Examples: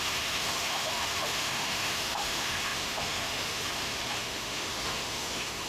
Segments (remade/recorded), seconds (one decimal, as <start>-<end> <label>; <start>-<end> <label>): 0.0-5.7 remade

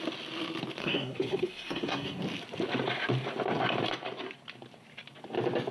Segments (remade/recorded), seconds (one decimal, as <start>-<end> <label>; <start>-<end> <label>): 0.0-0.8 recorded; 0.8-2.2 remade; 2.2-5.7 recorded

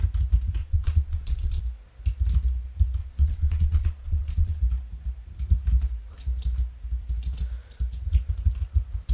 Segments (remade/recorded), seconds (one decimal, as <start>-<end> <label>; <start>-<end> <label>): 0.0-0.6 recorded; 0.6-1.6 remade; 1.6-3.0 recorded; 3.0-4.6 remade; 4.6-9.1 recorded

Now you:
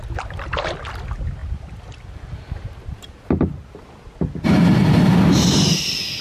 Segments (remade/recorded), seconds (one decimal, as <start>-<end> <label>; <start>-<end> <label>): 0.0-6.2 recorded

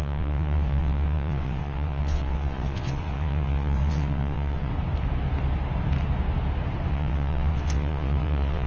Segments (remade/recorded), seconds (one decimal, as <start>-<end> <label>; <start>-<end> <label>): 0.0-4.7 remade; 4.7-6.9 recorded; 6.9-8.7 remade

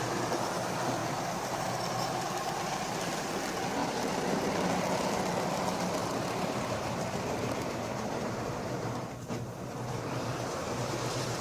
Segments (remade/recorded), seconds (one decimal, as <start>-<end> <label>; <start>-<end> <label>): 0.0-3.8 recorded; 3.8-4.5 remade; 4.5-6.0 recorded; 6.0-11.4 remade